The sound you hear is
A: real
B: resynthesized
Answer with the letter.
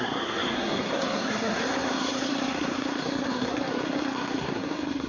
B